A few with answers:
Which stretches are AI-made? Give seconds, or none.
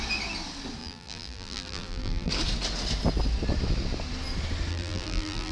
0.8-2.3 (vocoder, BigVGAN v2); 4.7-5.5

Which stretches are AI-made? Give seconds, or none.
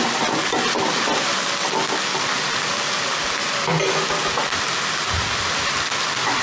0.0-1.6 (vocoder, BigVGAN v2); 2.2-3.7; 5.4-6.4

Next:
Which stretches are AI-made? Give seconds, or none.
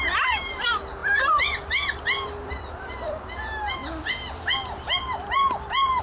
0.0-3.8 (vocoder, BigVGAN v2)